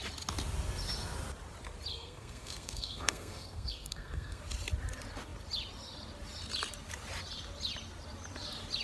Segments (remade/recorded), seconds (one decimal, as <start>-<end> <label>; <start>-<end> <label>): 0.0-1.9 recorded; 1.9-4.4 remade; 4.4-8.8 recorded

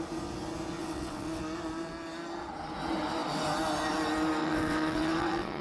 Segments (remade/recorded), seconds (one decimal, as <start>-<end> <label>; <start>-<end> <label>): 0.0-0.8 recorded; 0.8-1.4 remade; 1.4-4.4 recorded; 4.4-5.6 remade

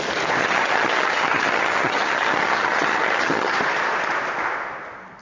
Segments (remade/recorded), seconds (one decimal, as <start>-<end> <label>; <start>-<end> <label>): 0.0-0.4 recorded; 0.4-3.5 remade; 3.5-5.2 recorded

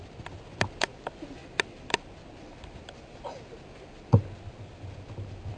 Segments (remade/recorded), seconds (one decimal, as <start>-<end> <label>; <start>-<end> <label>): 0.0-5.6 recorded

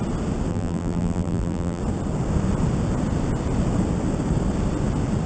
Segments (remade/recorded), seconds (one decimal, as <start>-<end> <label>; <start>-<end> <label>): 0.0-0.5 recorded; 0.5-1.8 remade; 1.8-5.3 recorded

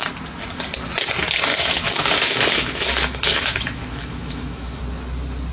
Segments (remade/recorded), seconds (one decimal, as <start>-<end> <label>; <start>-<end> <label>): 0.0-1.5 recorded; 1.5-4.8 remade; 4.8-5.5 recorded